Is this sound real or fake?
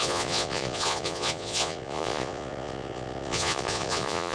fake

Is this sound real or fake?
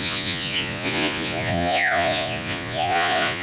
fake